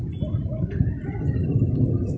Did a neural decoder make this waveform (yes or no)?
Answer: no